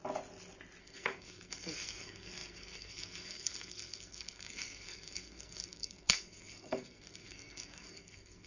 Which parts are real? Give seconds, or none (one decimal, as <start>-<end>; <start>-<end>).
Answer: 0.0-0.8